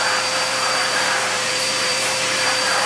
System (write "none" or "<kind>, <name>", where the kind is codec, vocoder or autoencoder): vocoder, BigVGAN v2